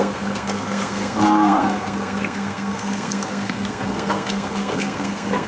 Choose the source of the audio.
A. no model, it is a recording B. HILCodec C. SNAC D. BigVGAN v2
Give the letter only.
C